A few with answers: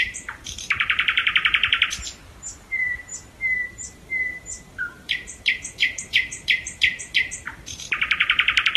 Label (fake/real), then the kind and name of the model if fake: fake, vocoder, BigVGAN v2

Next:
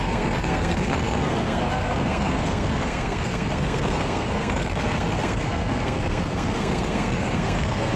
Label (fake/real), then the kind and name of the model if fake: fake, codec, SNAC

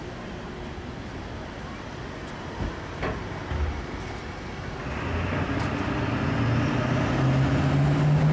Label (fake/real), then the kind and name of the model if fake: real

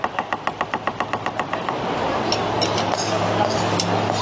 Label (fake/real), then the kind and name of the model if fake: real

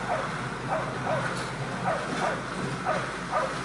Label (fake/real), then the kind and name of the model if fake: real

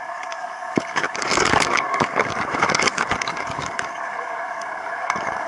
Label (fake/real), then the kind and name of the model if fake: fake, codec, DAC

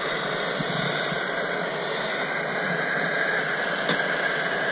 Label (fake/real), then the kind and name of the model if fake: real